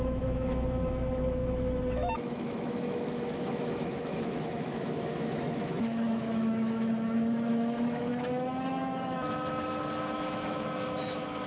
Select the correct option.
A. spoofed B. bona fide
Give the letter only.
A